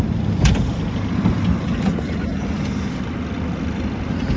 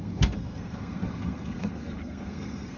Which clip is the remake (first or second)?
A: second